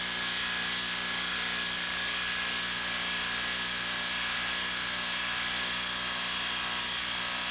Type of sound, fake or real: real